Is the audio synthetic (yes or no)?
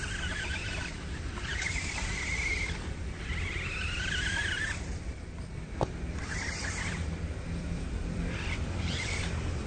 yes